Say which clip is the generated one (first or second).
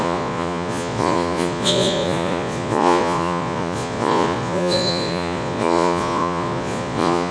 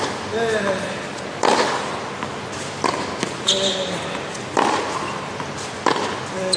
first